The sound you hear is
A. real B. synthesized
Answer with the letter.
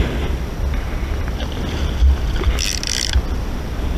A